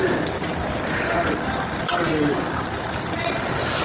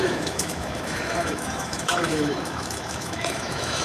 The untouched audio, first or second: first